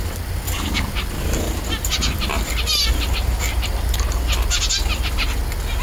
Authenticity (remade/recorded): recorded